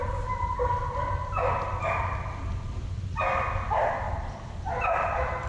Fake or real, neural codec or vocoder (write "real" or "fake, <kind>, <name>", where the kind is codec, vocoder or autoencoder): real